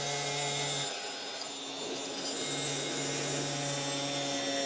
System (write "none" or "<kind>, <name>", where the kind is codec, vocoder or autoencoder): none